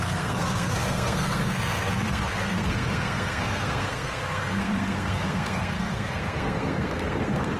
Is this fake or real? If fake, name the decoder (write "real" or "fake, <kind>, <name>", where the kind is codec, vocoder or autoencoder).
fake, codec, SNAC